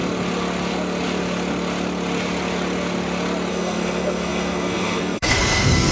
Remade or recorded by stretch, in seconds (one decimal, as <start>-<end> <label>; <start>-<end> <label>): 0.0-3.5 recorded; 3.5-5.9 remade